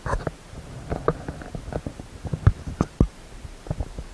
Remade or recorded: recorded